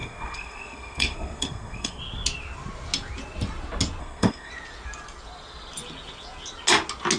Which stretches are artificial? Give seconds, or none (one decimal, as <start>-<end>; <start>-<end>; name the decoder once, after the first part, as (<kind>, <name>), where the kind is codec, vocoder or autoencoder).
0.0-2.0 (codec, SNAC); 4.0-4.5